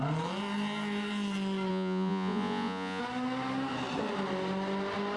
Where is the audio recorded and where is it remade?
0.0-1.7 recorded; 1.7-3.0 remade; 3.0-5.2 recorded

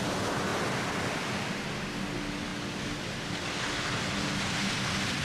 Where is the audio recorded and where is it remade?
0.0-5.2 recorded

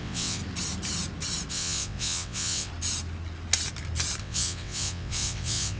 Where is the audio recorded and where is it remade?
0.0-0.4 remade; 0.4-1.5 recorded; 1.5-2.7 remade; 2.7-4.2 recorded; 4.2-5.8 remade

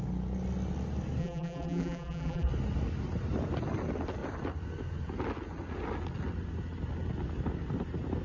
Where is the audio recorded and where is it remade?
0.0-1.2 recorded; 1.2-2.5 remade; 2.5-8.2 recorded